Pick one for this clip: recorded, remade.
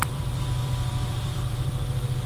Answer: remade